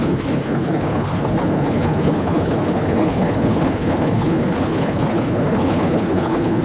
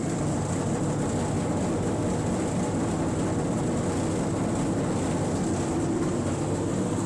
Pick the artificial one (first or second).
first